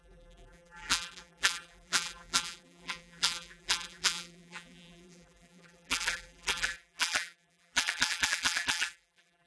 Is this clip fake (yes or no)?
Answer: yes